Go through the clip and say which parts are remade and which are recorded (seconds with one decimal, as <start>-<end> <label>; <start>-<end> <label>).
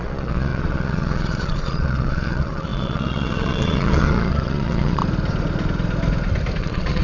0.0-5.0 remade; 5.0-6.6 recorded; 6.6-7.0 remade